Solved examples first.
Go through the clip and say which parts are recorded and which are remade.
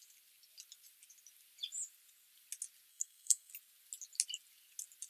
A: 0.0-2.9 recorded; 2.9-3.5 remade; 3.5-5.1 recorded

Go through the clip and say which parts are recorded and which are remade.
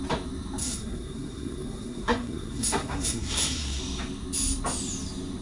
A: 0.0-0.6 recorded; 0.6-3.8 remade; 3.8-5.4 recorded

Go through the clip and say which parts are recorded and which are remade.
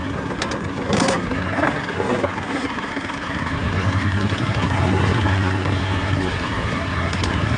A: 0.0-7.6 remade